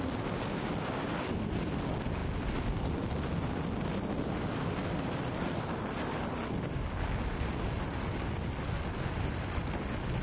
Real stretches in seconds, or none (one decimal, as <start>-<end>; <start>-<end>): 0.0-10.2